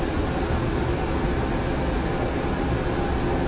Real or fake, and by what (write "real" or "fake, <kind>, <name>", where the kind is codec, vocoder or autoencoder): real